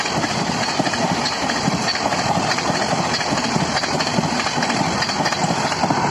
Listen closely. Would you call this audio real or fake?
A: fake